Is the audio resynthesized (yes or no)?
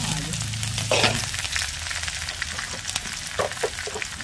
no